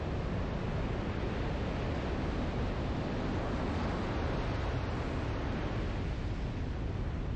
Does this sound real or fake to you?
real